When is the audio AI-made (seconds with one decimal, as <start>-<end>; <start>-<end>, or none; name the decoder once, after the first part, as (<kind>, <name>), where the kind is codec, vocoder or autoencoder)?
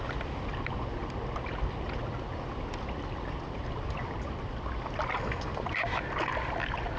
none